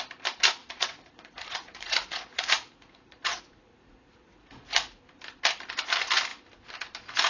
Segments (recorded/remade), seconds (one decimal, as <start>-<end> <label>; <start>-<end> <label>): 0.0-0.6 recorded; 0.6-5.0 remade; 5.0-7.3 recorded